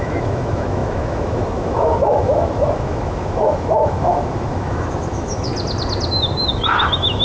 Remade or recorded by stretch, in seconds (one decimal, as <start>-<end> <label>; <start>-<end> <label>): 0.0-5.5 remade; 5.5-6.5 recorded; 6.5-7.2 remade